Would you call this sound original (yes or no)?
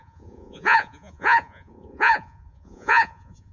no